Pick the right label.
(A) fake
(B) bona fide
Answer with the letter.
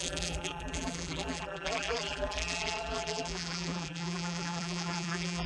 A